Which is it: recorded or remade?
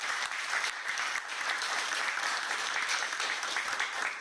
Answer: remade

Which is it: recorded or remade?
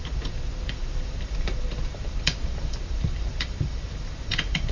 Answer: remade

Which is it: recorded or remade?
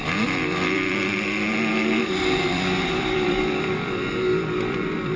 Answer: remade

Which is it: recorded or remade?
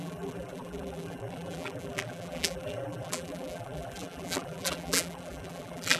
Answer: remade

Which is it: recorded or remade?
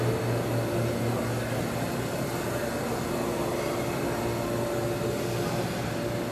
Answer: recorded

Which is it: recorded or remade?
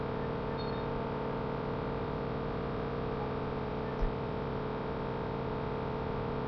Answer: recorded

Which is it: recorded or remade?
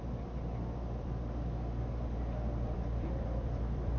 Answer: remade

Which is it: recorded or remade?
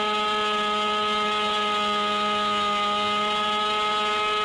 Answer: recorded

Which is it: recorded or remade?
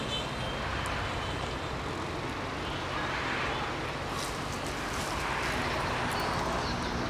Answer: recorded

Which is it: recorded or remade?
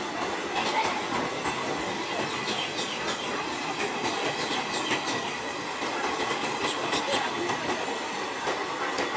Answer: recorded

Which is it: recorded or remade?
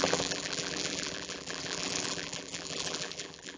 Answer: remade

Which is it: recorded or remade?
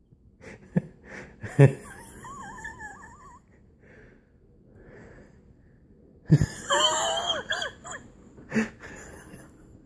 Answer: recorded